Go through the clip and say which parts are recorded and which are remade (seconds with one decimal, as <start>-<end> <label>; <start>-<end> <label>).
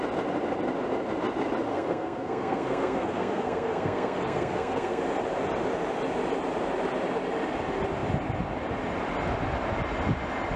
0.0-1.7 recorded; 1.7-5.0 remade; 5.0-10.6 recorded